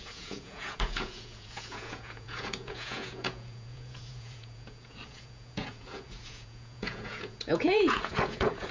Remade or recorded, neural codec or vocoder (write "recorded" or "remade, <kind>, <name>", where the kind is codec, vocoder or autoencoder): remade, vocoder, Vocos